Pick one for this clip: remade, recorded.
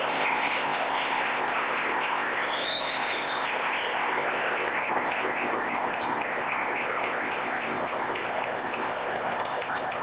remade